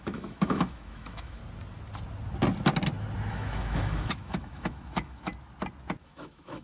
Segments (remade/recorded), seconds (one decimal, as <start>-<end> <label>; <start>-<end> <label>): 0.0-1.4 remade; 1.4-3.3 recorded; 3.3-5.3 remade; 5.3-6.0 recorded; 6.0-6.6 remade